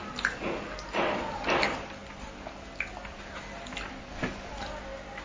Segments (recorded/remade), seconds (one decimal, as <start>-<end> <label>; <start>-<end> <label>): 0.0-5.2 recorded